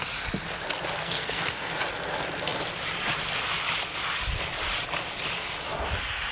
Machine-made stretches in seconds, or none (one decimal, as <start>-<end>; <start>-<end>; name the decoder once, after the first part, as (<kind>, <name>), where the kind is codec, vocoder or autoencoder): 1.0-1.7 (codec, SNAC)